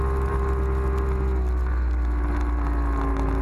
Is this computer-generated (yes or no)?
no